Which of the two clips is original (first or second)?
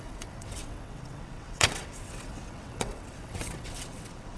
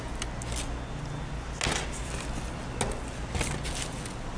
second